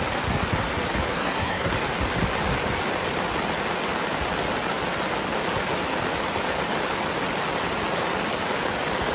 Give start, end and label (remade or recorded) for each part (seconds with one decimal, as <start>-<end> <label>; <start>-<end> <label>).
0.0-1.1 recorded; 1.1-1.7 remade; 1.7-9.1 recorded